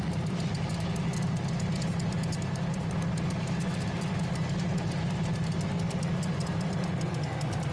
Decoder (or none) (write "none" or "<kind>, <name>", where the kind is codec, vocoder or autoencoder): none